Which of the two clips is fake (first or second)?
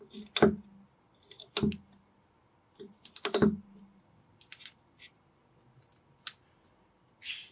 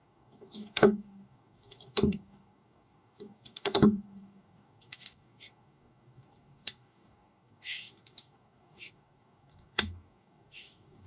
second